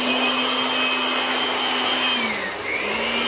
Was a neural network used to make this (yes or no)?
yes